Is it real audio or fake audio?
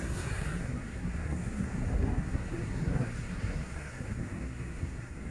fake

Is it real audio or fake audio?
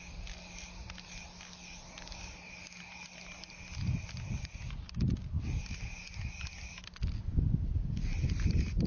real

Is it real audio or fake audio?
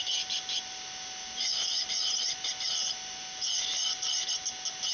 real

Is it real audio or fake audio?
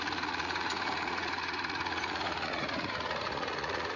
fake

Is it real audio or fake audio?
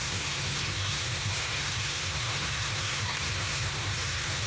fake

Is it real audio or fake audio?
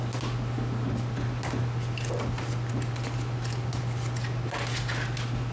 real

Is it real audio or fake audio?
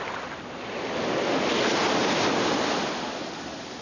real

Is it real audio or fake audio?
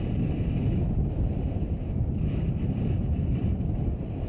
real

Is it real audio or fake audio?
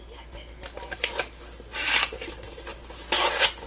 real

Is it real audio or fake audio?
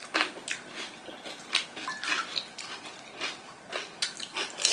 real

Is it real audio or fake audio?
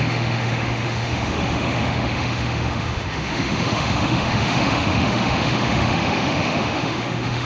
fake